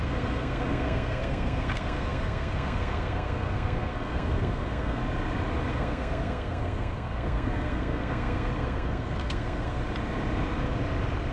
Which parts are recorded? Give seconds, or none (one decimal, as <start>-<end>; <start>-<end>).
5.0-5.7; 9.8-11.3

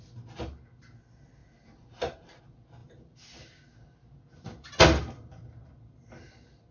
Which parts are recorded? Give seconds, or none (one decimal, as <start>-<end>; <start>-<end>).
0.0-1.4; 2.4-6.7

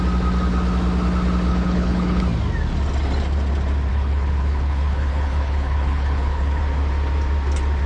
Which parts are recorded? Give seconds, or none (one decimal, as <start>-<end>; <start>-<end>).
0.0-1.5; 2.2-3.9; 6.6-7.9